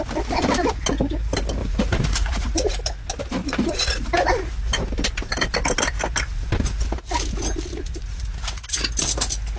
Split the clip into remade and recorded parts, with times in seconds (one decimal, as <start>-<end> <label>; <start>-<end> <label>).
0.0-1.6 recorded; 1.6-2.8 remade; 2.8-3.4 recorded; 3.4-4.1 remade; 4.1-8.0 recorded; 8.0-8.8 remade; 8.8-9.6 recorded